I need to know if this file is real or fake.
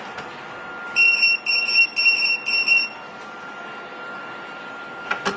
real